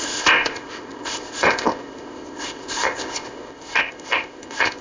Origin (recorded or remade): remade